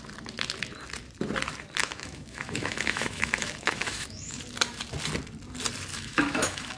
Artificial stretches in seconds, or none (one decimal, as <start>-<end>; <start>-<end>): 1.8-4.4; 5.9-6.8